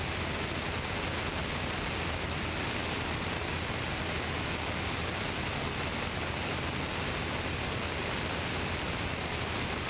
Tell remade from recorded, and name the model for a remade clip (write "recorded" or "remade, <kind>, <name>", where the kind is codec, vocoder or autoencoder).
recorded